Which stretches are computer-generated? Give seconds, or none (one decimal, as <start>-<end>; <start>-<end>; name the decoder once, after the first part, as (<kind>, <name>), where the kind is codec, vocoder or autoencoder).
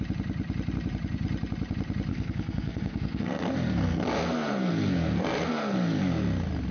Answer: 2.1-6.1 (codec, SNAC)